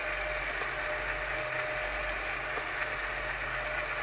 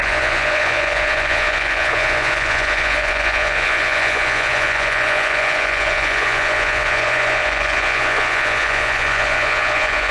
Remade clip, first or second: second